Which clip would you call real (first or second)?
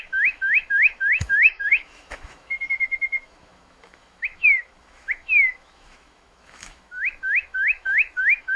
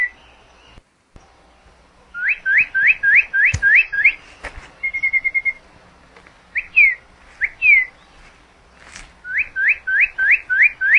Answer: second